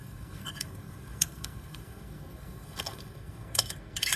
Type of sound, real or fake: fake